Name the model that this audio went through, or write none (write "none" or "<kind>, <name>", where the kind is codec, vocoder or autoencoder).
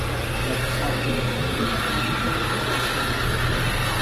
none